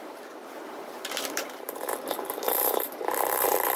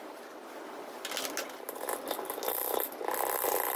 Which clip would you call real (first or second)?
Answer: second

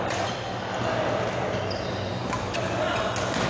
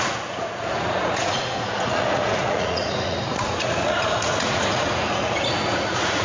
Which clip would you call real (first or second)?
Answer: first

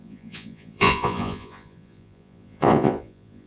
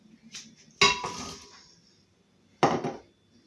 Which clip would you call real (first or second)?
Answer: second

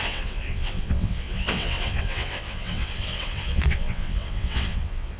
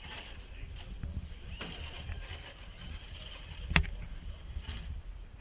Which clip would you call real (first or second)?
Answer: second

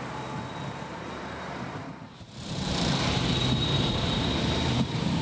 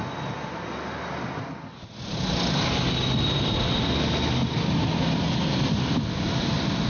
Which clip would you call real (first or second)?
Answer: second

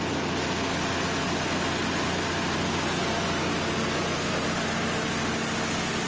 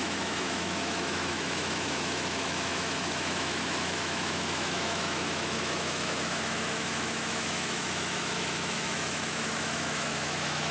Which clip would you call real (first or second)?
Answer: first